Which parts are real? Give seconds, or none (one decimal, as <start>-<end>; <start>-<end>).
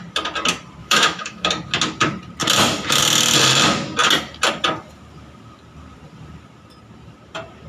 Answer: 0.0-0.8; 1.5-7.7